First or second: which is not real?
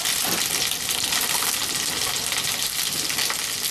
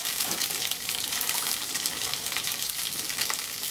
second